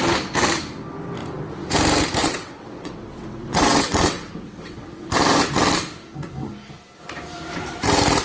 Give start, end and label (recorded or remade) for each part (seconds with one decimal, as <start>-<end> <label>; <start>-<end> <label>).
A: 0.0-2.2 recorded; 2.2-5.1 remade; 5.1-8.2 recorded